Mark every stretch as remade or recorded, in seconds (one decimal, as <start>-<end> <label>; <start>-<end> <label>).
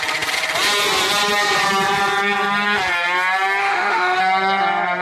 0.0-3.6 recorded; 3.6-4.2 remade; 4.2-5.0 recorded